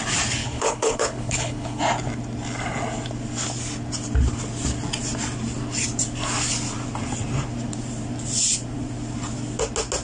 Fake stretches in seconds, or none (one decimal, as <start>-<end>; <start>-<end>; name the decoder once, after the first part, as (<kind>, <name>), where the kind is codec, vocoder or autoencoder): 0.4-1.8 (codec, HILCodec)